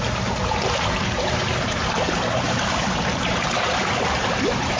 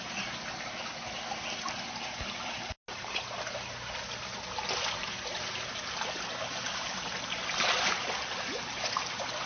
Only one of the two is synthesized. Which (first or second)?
first